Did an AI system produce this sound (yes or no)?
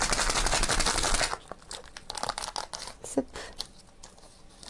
no